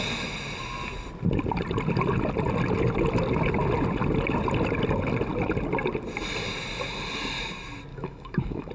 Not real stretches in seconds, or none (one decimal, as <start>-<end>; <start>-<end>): 7.9-8.7